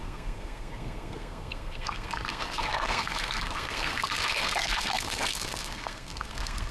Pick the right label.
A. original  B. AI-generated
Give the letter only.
B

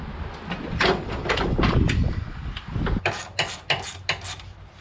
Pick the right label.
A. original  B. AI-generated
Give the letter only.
A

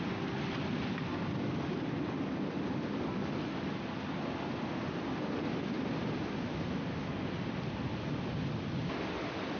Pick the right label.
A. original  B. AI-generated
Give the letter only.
A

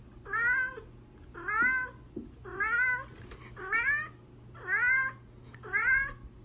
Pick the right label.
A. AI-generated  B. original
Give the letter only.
B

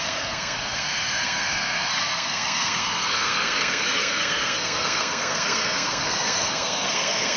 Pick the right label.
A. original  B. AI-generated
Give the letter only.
B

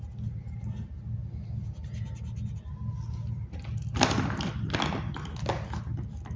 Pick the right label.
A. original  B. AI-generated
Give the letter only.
A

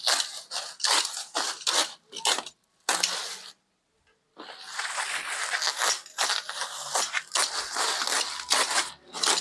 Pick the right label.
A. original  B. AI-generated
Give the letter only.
A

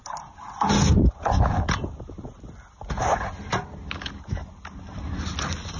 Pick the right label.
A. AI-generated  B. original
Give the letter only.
B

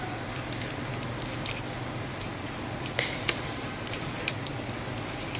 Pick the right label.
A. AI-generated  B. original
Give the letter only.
A